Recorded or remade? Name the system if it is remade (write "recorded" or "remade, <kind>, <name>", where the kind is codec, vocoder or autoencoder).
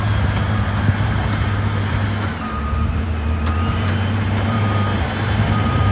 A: remade, vocoder, BigVGAN v2